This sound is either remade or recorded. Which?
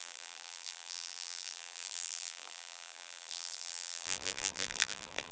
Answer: remade